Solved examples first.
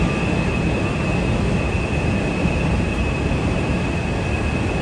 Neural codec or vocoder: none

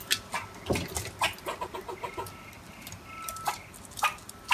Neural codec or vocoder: none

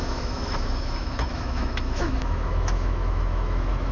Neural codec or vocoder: autoencoder, DAC-VAE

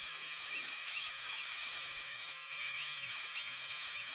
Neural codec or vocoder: autoencoder, DAC-VAE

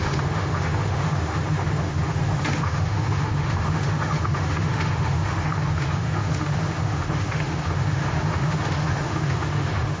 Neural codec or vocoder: autoencoder, DAC-VAE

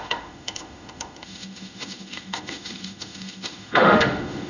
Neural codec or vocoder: autoencoder, DAC-VAE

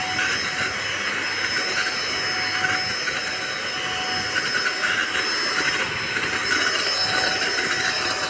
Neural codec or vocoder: none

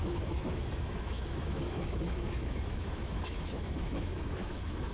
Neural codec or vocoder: autoencoder, DAC-VAE